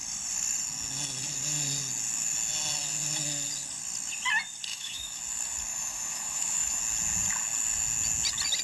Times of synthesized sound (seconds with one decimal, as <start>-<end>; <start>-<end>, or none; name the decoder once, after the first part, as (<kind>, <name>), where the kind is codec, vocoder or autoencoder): 4.7-5.2 (autoencoder, DAC-VAE); 5.7-6.8